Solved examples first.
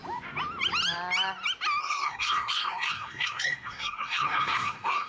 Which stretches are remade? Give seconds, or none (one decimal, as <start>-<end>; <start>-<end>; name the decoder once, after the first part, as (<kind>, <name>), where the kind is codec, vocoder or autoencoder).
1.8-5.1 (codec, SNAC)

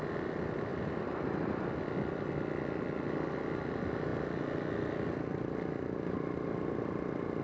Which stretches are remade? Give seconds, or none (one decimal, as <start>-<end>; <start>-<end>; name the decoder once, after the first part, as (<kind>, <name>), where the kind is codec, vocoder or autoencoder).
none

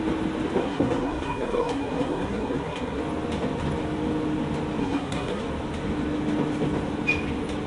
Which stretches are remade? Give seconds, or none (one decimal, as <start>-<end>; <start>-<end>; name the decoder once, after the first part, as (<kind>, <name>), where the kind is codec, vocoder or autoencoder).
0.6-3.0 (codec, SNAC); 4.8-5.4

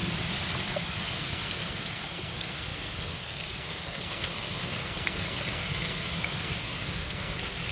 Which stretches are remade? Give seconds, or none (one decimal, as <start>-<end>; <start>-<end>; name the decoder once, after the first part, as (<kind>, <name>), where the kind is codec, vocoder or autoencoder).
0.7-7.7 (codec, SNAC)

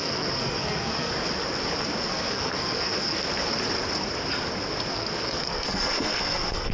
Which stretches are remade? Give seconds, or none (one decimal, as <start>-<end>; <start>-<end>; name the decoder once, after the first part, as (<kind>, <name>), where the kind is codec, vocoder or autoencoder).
0.0-1.1 (codec, SNAC); 2.1-3.2; 4.9-6.7